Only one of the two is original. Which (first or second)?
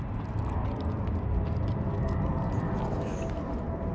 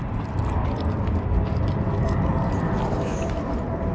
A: first